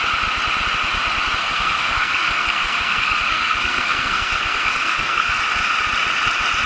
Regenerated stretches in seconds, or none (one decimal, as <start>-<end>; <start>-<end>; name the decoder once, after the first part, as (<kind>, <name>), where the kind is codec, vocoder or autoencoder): 1.4-5.4 (codec, SNAC)